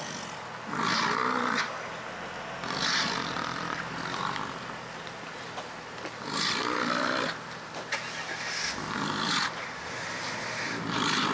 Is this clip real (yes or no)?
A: yes